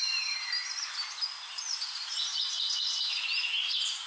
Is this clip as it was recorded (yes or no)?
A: yes